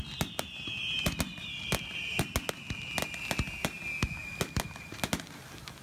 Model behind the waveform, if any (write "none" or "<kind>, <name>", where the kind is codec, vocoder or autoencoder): none